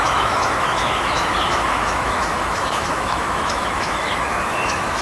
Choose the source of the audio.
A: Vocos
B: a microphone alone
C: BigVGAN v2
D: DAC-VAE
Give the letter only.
D